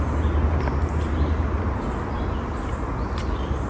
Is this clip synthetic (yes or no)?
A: no